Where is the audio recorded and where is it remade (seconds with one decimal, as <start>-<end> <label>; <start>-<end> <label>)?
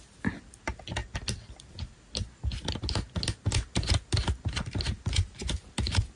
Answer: 0.0-6.2 recorded